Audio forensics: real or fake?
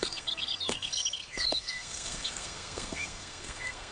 fake